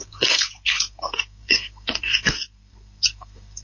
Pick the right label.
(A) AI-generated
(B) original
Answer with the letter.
A